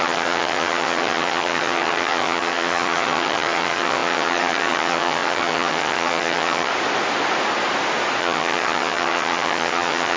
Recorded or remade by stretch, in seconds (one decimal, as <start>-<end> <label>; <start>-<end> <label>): 0.0-6.7 remade; 6.7-8.2 recorded; 8.2-10.2 remade